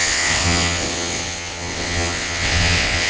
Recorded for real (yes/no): no